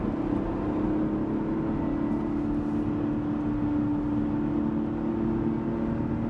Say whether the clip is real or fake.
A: real